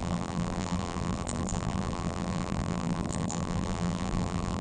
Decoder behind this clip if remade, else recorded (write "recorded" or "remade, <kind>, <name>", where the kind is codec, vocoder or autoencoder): remade, vocoder, BigVGAN v2